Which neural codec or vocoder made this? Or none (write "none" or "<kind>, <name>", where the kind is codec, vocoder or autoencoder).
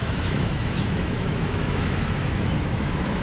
autoencoder, DAC-VAE